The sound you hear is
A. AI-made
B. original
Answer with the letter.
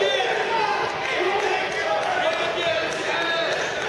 B